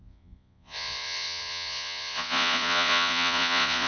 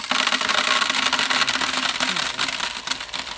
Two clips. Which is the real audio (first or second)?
second